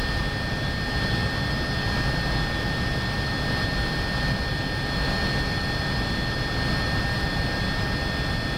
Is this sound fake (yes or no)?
no